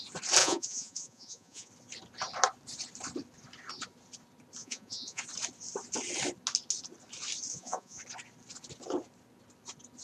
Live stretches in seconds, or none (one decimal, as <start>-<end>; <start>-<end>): 0.0-0.4; 1.7-4.6; 5.2-7.5; 8.0-10.0